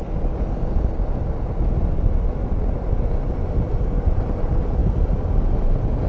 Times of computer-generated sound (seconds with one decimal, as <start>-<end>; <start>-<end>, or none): none